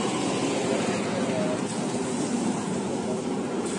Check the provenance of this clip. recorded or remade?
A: recorded